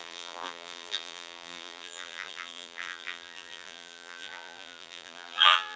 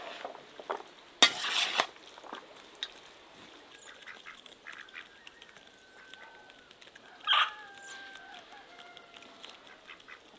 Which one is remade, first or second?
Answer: first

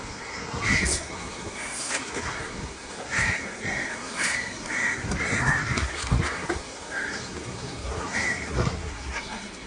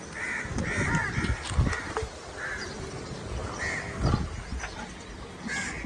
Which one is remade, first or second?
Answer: first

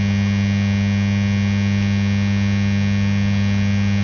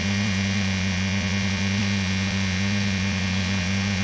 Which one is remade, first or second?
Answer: second